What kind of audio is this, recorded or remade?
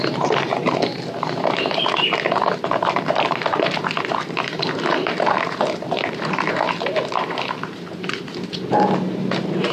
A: remade